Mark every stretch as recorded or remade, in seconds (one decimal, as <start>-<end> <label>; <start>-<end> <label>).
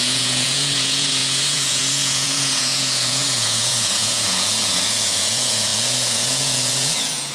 0.0-7.3 remade